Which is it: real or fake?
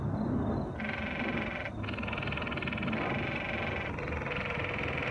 real